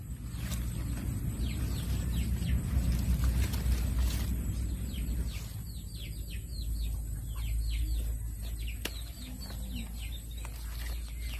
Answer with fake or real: real